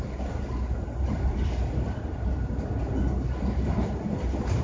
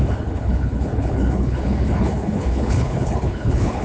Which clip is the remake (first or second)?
second